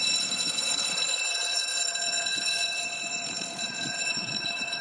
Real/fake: fake